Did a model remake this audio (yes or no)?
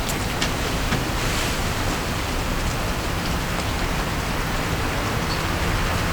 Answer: no